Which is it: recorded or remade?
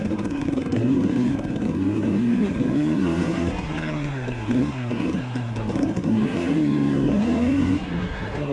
remade